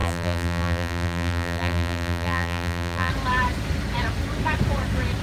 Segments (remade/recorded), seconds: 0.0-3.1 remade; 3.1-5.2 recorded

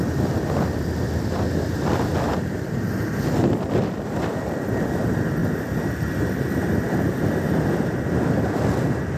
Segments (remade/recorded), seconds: 0.0-9.2 remade